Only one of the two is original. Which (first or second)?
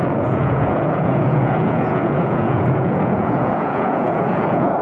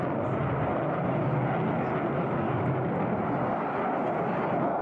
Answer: second